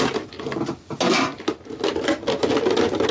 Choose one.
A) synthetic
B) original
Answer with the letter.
B